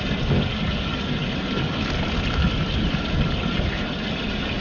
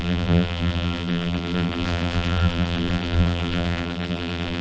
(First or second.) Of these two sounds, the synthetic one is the second